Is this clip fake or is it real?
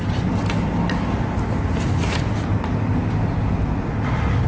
real